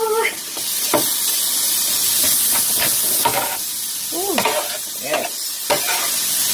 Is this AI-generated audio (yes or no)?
no